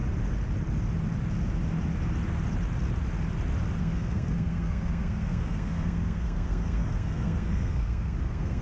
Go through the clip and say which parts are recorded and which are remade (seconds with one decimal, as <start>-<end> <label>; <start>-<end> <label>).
0.0-3.8 recorded; 3.8-8.6 remade